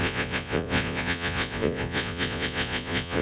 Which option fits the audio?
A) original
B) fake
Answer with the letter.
B